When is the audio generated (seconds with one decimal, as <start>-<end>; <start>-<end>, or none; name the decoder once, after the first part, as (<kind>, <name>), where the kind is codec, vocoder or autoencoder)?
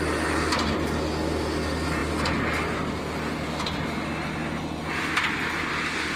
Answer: none